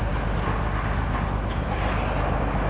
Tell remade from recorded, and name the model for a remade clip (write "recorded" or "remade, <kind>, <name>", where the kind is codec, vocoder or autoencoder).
recorded